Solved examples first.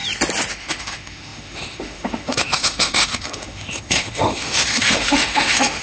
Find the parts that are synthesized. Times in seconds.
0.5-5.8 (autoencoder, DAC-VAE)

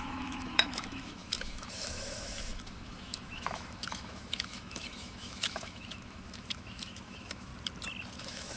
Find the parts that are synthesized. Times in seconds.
0.0-7.5 (autoencoder, DAC-VAE); 8.2-8.6

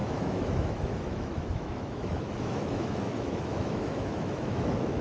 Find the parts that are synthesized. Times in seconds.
0.0-5.0 (autoencoder, DAC-VAE)

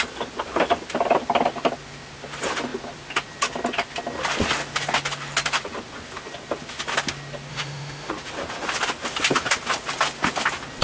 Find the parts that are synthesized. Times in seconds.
7.5-8.1 (autoencoder, DAC-VAE)

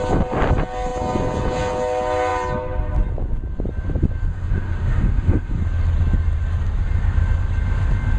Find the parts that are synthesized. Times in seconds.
4.3-5.6 (autoencoder, DAC-VAE)